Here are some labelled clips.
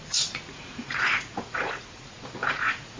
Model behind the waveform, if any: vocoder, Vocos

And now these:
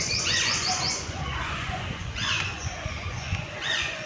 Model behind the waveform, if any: vocoder, Vocos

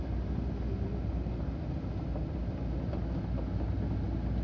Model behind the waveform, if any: none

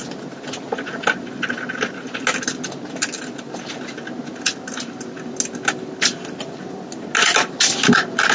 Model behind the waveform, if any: none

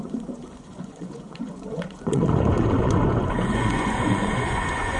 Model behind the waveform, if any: vocoder, Vocos